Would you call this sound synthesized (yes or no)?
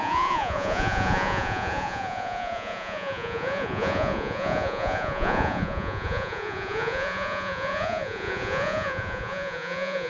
yes